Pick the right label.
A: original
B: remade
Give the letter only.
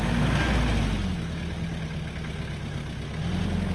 A